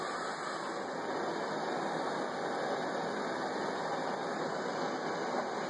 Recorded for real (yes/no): yes